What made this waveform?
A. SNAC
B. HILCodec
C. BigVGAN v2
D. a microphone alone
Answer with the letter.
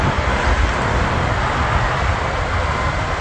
D